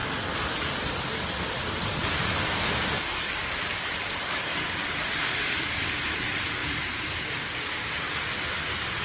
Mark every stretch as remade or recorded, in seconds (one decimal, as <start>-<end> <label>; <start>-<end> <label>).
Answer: 0.0-2.0 recorded; 2.0-5.8 remade; 5.8-6.6 recorded; 6.6-7.9 remade; 7.9-9.0 recorded